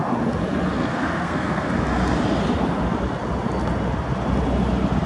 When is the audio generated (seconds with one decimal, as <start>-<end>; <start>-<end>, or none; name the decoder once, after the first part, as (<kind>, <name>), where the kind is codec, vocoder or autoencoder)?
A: 0.7-1.7 (codec, SNAC)